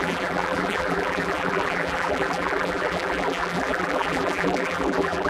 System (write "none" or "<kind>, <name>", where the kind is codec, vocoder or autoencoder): vocoder, BigVGAN v2